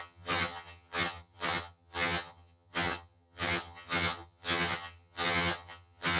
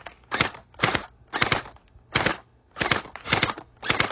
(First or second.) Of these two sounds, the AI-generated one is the first